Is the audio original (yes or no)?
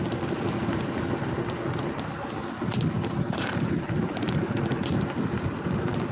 yes